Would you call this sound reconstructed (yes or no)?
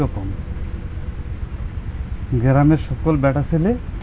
no